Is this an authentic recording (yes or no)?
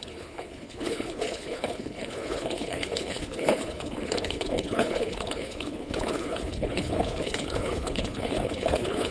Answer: no